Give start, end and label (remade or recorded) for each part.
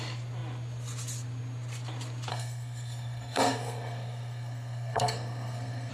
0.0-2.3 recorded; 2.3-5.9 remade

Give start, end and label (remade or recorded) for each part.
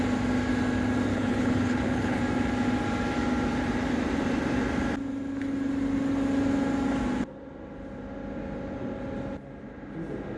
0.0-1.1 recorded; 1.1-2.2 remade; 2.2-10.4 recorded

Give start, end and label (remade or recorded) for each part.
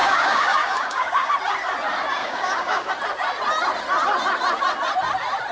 0.0-1.3 remade; 1.3-2.2 recorded; 2.2-2.9 remade; 2.9-5.5 recorded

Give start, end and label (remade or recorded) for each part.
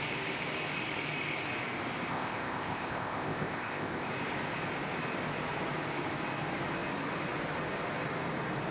0.0-2.1 recorded; 2.1-4.1 remade; 4.1-8.7 recorded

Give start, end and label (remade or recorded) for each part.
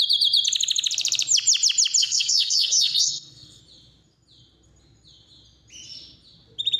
0.0-2.0 recorded; 2.0-3.6 remade; 3.6-6.8 recorded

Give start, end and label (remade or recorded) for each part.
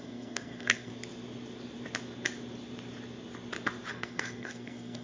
0.0-0.9 remade; 0.9-3.9 recorded; 3.9-5.0 remade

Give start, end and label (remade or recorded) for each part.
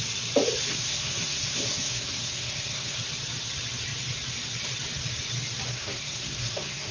0.0-0.7 recorded; 0.7-3.0 remade; 3.0-5.7 recorded; 5.7-6.9 remade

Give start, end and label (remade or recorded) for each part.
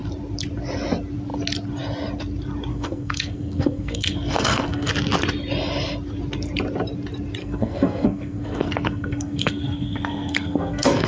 0.0-2.7 recorded; 2.7-4.9 remade; 4.9-7.4 recorded; 7.4-11.1 remade